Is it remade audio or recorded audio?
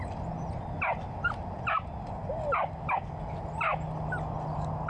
recorded